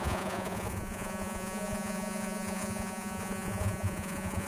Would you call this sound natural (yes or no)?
no